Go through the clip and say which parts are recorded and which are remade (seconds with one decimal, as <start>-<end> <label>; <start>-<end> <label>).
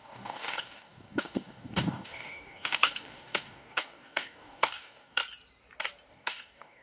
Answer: 0.0-5.2 remade; 5.2-6.1 recorded; 6.1-6.8 remade